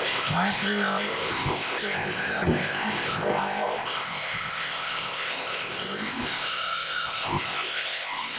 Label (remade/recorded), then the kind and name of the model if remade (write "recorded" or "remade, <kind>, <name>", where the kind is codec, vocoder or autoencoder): remade, codec, ZipCodec